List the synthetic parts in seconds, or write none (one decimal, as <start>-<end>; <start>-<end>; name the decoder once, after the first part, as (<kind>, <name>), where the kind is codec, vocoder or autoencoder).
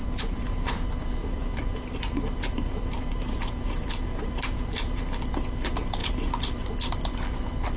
0.0-0.7 (vocoder, BigVGAN v2); 1.2-5.1; 6.0-6.6